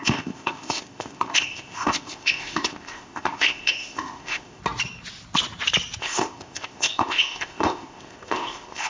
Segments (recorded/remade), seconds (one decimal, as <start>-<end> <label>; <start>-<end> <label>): 0.0-4.6 remade; 4.6-6.0 recorded; 6.0-8.9 remade